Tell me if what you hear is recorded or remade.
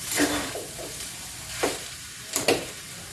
remade